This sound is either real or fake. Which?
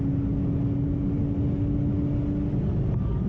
real